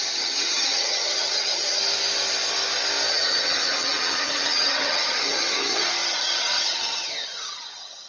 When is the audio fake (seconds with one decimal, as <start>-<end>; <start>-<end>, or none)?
0.0-1.8; 3.1-8.1